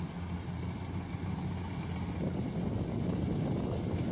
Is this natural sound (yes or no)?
yes